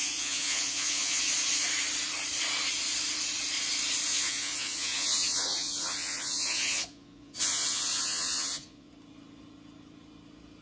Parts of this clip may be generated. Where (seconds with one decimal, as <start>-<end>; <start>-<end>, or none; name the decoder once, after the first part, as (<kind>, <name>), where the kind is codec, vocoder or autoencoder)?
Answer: 0.0-1.2 (vocoder, Vocos); 4.1-8.9